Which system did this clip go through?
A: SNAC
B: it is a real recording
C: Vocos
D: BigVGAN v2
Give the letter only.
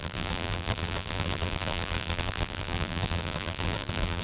D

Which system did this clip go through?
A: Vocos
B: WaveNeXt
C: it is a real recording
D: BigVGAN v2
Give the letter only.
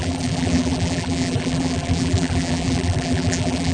D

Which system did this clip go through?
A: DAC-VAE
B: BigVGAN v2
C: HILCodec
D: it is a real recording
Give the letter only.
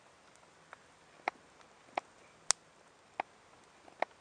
D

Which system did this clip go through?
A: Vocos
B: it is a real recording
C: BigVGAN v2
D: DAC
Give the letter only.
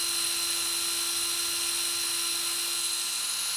B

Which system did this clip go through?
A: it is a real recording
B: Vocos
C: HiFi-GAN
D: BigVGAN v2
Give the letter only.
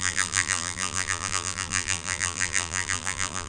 D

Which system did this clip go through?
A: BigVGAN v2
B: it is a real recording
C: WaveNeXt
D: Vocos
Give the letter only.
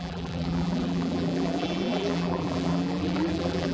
A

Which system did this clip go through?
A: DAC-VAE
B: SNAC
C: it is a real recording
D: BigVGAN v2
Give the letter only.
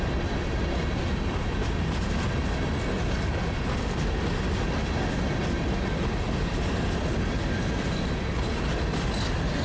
C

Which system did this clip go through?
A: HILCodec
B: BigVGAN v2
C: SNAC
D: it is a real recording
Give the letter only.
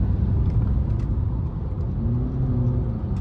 D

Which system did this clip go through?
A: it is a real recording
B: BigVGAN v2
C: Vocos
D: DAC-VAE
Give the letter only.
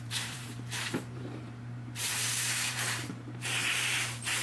B